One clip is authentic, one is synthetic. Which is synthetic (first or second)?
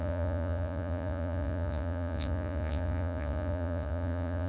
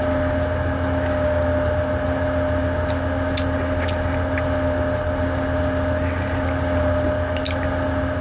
first